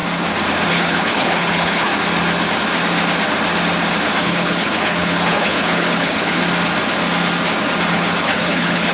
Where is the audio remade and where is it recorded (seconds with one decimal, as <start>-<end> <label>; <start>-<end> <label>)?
0.0-0.7 recorded; 0.7-1.9 remade; 1.9-4.2 recorded; 4.2-6.4 remade; 6.4-7.9 recorded; 7.9-8.9 remade